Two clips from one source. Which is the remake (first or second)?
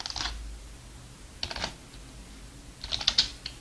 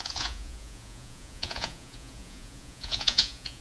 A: second